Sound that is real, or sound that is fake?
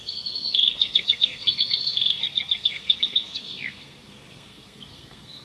fake